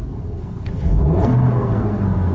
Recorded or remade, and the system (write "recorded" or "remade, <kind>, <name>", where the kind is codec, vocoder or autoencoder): remade, codec, SNAC